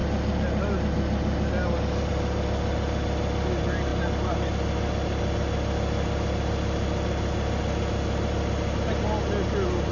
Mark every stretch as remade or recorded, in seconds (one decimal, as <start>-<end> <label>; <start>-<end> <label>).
0.0-9.9 recorded